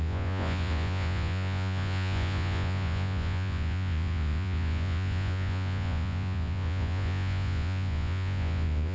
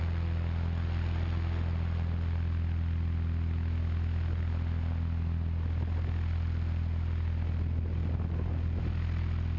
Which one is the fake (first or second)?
first